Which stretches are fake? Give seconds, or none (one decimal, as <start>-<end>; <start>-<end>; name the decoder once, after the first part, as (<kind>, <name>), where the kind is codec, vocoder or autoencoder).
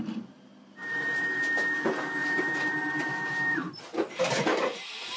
0.8-1.4 (vocoder, BigVGAN v2); 2.2-4.2